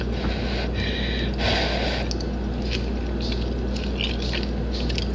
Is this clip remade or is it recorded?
recorded